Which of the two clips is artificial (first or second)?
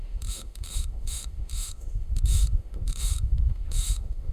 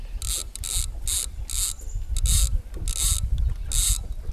first